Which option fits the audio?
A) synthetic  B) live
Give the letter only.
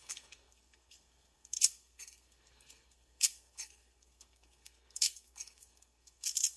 A